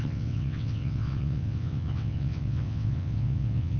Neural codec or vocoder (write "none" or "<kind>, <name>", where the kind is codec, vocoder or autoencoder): vocoder, WaveNeXt